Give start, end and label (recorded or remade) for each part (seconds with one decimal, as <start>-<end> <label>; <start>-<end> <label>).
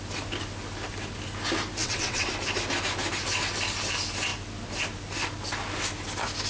0.0-1.8 recorded; 1.8-2.3 remade; 2.3-6.5 recorded